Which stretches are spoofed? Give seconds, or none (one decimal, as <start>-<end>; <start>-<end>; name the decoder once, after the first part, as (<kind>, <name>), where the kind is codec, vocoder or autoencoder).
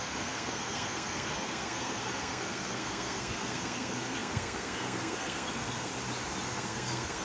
0.0-5.9 (codec, SNAC); 6.4-7.2